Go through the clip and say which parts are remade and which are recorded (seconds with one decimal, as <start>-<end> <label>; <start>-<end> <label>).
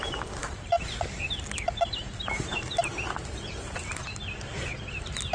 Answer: 0.0-0.4 recorded; 0.4-1.3 remade; 1.3-5.3 recorded